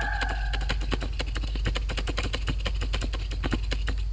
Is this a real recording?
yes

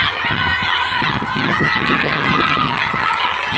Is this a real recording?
no